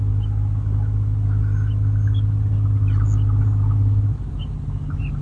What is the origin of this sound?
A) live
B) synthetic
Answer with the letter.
A